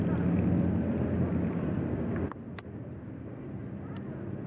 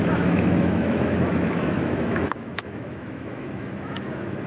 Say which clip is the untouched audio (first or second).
first